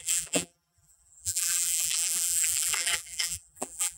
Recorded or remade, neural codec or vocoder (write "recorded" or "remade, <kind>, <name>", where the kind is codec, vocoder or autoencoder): remade, vocoder, BigVGAN v2